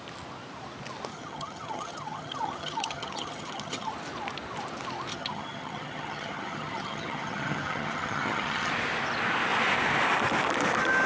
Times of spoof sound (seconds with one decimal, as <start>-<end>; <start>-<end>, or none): 1.1-3.9; 5.1-8.7